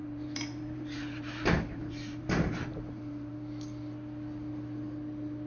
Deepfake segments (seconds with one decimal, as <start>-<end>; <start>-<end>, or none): 0.0-3.3